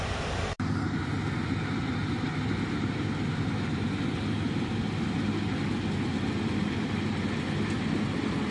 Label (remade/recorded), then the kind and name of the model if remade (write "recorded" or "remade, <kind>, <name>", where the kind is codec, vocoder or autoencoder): recorded